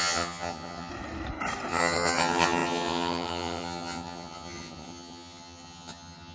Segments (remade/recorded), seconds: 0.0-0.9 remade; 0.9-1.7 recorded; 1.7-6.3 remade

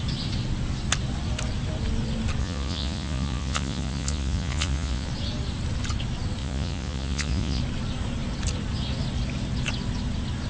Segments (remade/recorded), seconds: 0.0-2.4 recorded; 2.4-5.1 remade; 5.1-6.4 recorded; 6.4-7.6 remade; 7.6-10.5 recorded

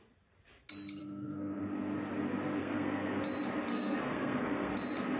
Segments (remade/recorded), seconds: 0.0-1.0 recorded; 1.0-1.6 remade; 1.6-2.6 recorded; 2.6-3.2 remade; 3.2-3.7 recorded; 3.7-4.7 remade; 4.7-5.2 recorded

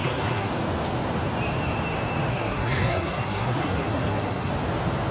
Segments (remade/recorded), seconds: 0.0-0.5 remade; 0.5-2.3 recorded; 2.3-4.5 remade; 4.5-5.1 recorded

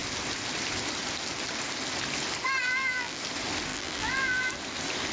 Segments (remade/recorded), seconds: 0.0-2.6 recorded; 2.6-3.2 remade; 3.2-3.7 recorded; 3.7-4.5 remade; 4.5-5.1 recorded

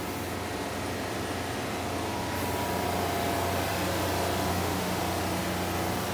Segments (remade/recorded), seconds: 0.0-4.5 recorded; 4.5-5.0 remade; 5.0-6.1 recorded

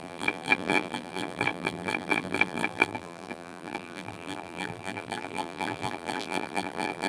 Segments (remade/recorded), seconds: 0.0-7.1 remade